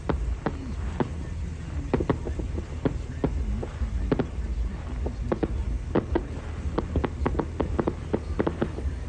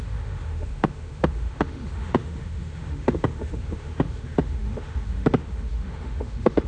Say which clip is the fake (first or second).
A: second